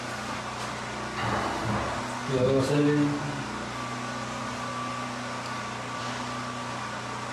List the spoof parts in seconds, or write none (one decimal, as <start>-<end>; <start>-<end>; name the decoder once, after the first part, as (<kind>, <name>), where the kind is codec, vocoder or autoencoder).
none